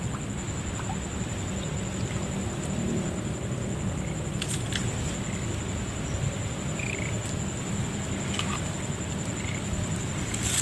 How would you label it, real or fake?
real